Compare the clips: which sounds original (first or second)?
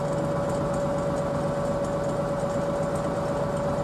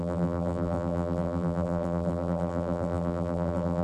first